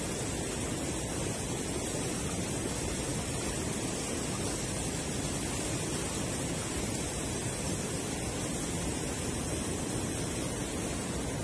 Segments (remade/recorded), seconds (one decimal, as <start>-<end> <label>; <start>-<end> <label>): 0.0-11.4 recorded